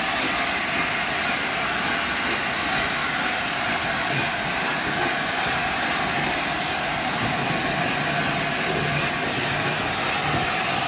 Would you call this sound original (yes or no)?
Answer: yes